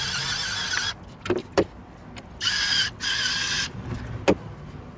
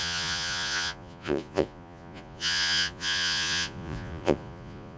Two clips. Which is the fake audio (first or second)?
second